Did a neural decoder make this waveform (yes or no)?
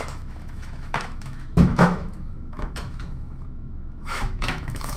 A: yes